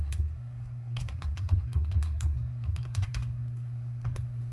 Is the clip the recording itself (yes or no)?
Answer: no